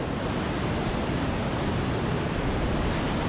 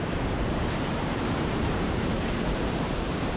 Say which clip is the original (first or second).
first